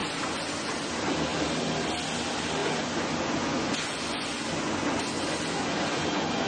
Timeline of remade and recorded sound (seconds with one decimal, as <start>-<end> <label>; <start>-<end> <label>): 0.0-0.7 remade; 0.7-2.6 recorded; 2.6-6.5 remade